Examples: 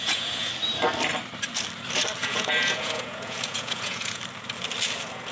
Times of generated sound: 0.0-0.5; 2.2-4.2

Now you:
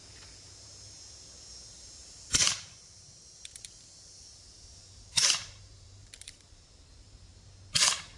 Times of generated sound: 0.0-7.3